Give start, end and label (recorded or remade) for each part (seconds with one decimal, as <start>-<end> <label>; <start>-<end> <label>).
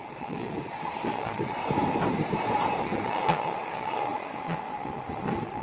0.0-1.6 remade; 1.6-2.8 recorded; 2.8-5.6 remade